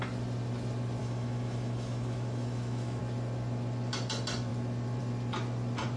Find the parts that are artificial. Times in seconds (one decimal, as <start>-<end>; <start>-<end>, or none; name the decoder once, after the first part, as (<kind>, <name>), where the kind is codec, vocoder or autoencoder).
1.0-3.0 (autoencoder, DAC-VAE)